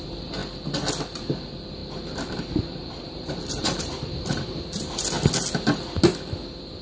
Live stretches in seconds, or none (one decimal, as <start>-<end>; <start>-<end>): 0.0-1.8; 5.0-6.8